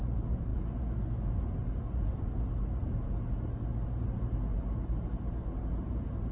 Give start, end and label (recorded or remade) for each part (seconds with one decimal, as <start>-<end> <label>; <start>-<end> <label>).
0.0-6.3 recorded